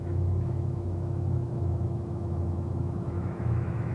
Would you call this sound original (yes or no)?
no